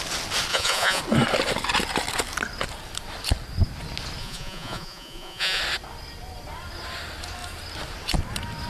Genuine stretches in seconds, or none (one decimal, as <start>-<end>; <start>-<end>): 0.0-0.5; 1.0-4.2; 5.6-8.7